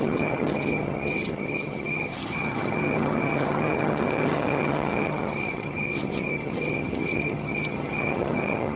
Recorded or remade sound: remade